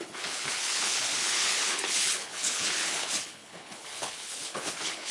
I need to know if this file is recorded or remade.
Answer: remade